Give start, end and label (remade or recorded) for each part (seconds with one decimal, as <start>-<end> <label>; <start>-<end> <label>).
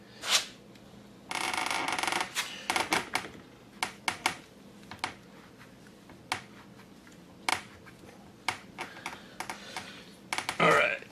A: 0.0-11.1 recorded